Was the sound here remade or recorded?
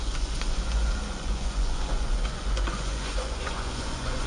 remade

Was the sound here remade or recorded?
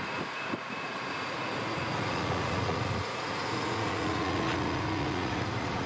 remade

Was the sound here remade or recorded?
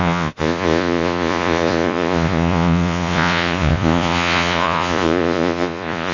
remade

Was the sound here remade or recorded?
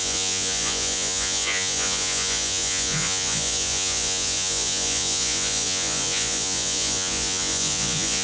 remade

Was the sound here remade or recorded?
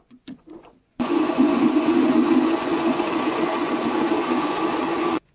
remade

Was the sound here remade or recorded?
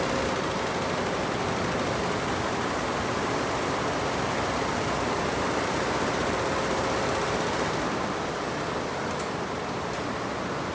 recorded